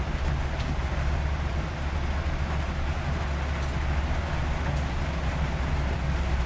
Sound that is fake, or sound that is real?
real